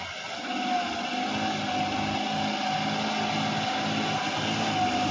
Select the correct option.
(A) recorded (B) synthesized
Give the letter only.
A